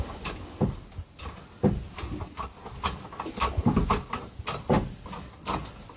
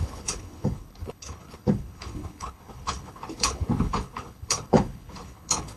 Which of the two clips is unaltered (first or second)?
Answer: first